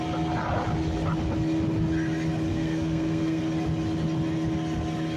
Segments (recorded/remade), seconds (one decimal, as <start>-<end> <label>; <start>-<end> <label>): 0.0-2.5 recorded; 2.5-3.4 remade; 3.4-5.2 recorded

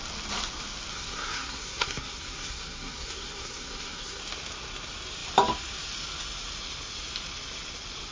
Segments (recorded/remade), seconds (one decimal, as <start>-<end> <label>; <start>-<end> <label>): 0.0-0.9 recorded; 0.9-4.2 remade; 4.2-8.1 recorded

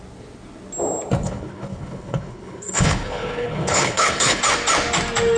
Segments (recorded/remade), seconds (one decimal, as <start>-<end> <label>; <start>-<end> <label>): 0.0-1.2 recorded; 1.2-4.4 remade; 4.4-5.4 recorded

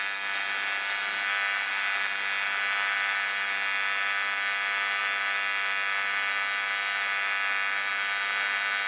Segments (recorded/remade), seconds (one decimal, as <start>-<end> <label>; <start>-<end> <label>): 0.0-8.9 recorded

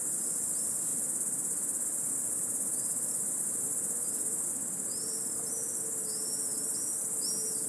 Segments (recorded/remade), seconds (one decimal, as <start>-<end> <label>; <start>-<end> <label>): 0.0-7.7 recorded

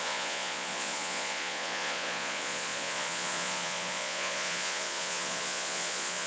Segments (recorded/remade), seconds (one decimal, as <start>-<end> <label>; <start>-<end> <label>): 0.0-6.3 remade

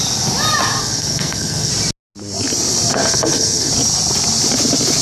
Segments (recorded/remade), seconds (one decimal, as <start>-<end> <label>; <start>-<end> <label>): 0.0-0.8 recorded; 0.8-1.7 remade; 1.7-2.9 recorded; 2.9-3.7 remade; 3.7-5.0 recorded

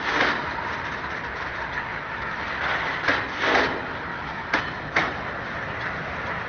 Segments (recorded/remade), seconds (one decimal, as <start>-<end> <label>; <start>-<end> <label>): 0.0-1.9 recorded; 1.9-2.5 remade; 2.5-4.1 recorded; 4.1-4.6 remade; 4.6-6.5 recorded